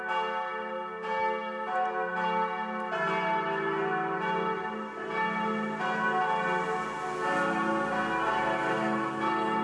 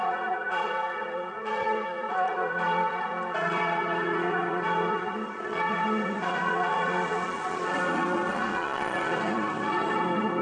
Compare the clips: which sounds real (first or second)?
first